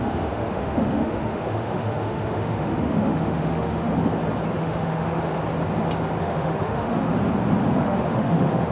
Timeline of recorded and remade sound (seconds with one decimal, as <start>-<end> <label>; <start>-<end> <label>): 0.0-4.0 remade; 4.0-4.6 recorded; 4.6-5.3 remade; 5.3-6.2 recorded; 6.2-7.1 remade; 7.1-7.8 recorded; 7.8-8.7 remade